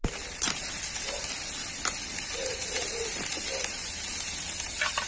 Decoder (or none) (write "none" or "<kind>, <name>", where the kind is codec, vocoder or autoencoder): none